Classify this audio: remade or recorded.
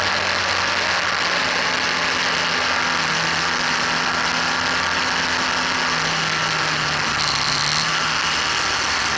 recorded